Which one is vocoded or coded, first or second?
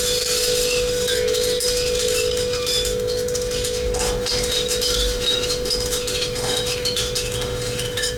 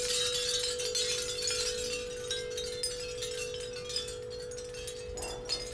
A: first